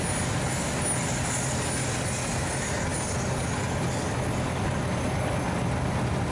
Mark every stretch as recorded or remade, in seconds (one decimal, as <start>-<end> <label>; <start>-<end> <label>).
0.0-6.3 recorded